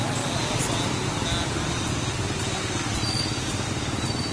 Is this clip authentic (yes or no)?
yes